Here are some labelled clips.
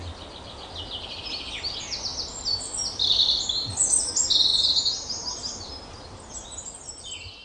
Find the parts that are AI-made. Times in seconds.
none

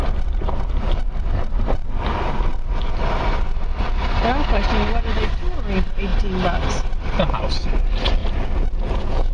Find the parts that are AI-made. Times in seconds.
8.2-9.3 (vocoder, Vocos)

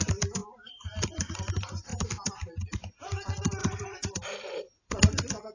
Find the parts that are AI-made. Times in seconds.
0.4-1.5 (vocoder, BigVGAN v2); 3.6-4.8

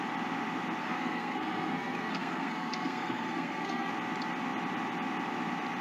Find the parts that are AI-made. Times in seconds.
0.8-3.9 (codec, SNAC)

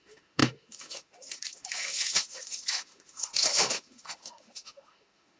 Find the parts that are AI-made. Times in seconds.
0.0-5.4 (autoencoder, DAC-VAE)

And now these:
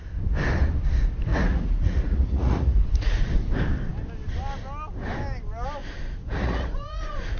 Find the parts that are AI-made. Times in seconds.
1.3-3.2 (vocoder, Vocos); 5.8-7.4

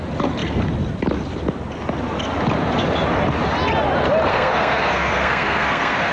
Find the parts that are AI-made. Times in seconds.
4.3-6.1 (codec, SNAC)

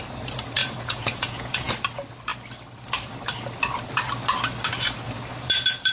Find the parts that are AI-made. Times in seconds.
0.6-1.7 (vocoder, Vocos)